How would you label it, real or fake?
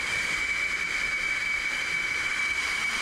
fake